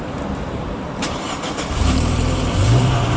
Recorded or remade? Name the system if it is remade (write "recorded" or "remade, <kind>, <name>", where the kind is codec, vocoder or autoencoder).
remade, vocoder, BigVGAN v2